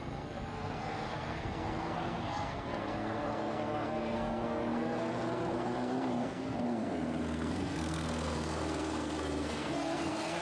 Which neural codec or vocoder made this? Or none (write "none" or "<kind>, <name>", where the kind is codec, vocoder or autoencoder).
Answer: codec, SNAC